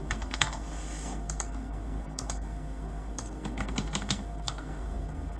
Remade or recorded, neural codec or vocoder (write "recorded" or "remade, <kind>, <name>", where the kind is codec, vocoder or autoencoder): remade, codec, SNAC